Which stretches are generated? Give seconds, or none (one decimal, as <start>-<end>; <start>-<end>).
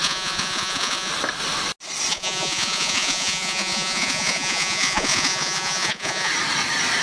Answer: 0.0-1.1; 2.1-6.3